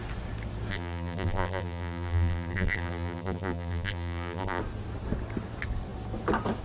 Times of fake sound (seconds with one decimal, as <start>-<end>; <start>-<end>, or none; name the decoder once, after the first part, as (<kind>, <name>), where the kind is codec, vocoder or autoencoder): 0.7-4.6 (vocoder, BigVGAN v2)